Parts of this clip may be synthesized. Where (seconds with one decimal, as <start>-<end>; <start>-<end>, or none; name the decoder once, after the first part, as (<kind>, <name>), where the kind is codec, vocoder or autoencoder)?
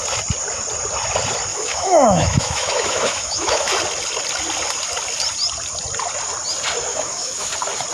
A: 1.5-3.7 (autoencoder, DAC-VAE); 6.9-7.5